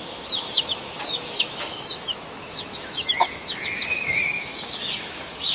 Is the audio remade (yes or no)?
yes